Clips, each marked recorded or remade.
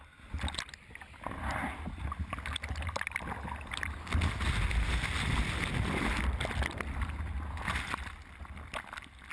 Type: recorded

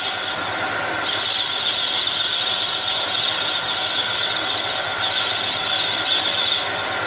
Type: recorded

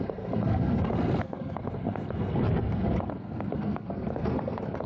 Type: remade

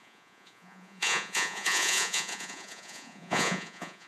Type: remade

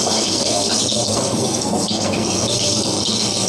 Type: remade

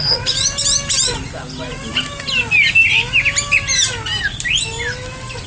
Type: recorded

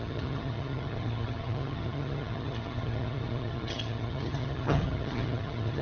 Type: remade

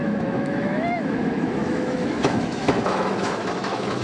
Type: remade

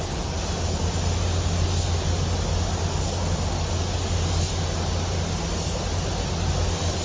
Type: recorded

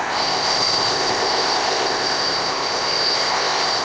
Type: remade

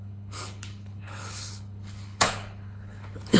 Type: remade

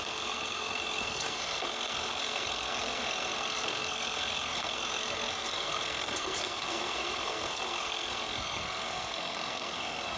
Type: remade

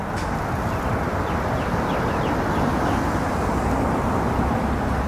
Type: recorded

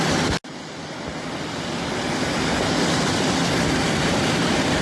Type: recorded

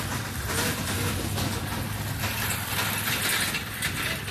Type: recorded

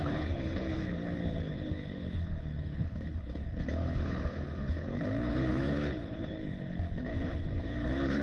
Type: remade